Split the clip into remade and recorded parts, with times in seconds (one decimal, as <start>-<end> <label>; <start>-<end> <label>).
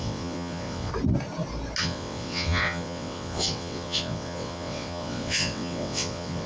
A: 0.0-0.9 remade; 0.9-1.8 recorded; 1.8-6.5 remade